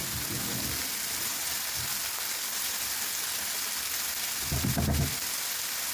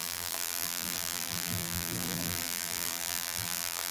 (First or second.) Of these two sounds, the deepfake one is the second